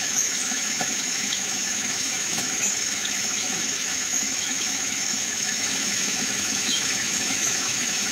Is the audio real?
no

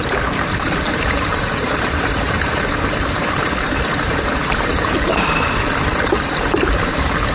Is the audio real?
no